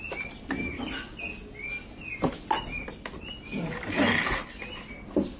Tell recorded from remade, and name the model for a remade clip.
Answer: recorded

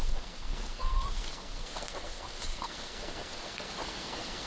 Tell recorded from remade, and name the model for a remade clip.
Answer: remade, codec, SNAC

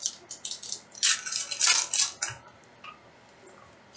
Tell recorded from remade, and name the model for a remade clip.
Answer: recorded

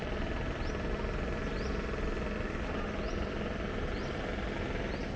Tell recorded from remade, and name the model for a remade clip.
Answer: recorded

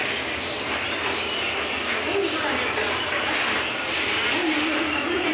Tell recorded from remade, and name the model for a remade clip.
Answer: recorded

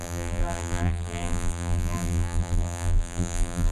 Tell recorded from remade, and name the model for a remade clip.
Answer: remade, vocoder, BigVGAN v2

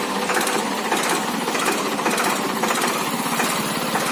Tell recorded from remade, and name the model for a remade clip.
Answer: remade, vocoder, BigVGAN v2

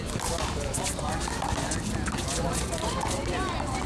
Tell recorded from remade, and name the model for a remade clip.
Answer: recorded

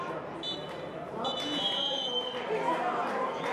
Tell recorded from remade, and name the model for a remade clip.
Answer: recorded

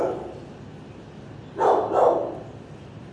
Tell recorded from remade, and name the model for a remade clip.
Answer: recorded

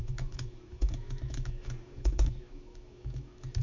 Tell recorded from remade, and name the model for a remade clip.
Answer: remade, autoencoder, DAC-VAE